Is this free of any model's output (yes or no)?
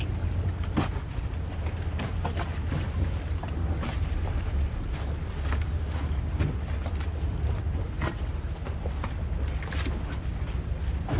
yes